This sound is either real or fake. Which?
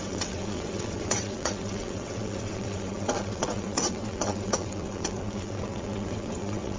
fake